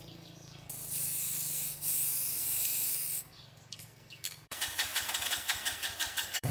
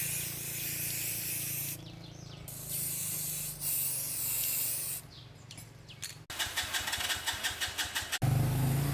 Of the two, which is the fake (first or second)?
first